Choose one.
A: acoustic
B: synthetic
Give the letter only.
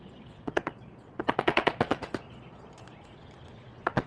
B